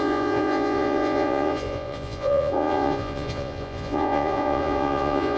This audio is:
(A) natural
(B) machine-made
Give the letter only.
B